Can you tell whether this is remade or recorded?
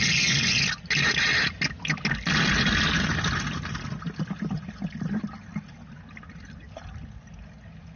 recorded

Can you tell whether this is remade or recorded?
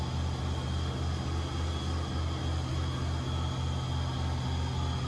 recorded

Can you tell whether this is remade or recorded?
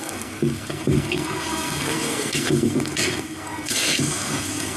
remade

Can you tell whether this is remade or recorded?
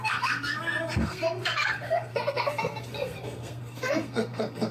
remade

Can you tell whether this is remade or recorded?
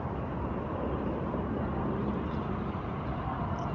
recorded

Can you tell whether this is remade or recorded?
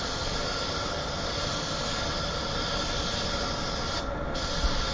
recorded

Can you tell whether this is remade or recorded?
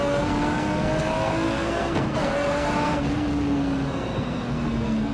remade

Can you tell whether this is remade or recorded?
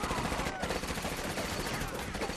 recorded